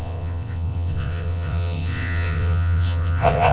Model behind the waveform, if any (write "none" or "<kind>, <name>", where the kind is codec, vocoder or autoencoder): vocoder, WaveNeXt